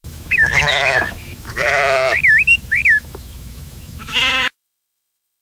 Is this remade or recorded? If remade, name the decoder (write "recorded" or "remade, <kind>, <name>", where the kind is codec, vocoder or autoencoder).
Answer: remade, autoencoder, DAC-VAE